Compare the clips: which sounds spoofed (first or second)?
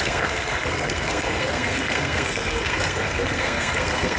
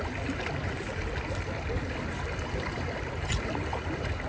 first